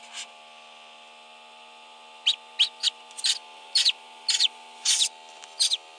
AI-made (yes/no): no